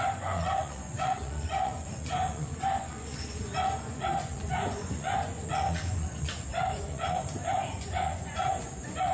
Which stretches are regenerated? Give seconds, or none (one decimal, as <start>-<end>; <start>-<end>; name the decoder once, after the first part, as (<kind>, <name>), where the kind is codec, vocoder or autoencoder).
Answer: 0.0-9.1 (vocoder, Vocos)